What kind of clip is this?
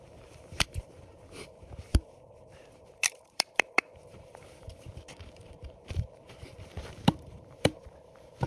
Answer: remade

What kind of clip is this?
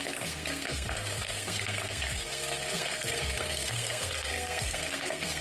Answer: remade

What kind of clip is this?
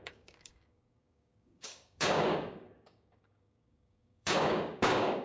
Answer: remade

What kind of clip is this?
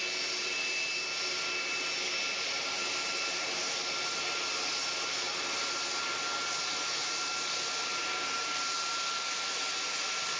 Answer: recorded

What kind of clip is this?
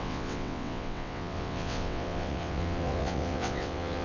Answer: remade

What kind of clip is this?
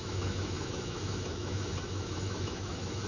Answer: remade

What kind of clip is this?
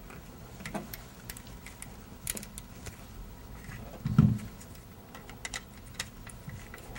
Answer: recorded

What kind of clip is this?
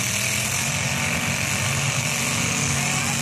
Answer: recorded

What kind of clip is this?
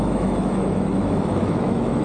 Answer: remade